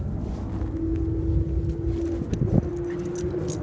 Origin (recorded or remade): recorded